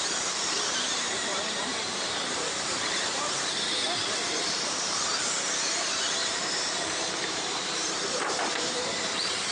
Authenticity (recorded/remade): remade